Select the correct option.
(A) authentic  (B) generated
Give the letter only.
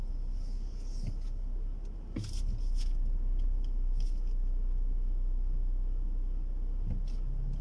A